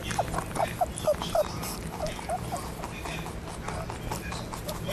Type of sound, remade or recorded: recorded